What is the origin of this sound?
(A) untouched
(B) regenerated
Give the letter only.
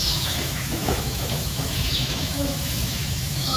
B